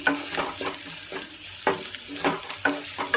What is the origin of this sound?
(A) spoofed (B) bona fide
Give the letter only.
B